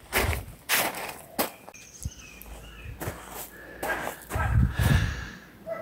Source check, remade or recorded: recorded